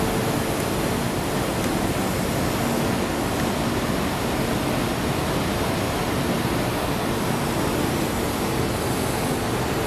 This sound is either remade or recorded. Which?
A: recorded